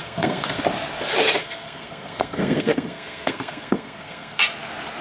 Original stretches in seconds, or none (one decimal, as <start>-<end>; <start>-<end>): 0.6-1.4; 4.4-5.0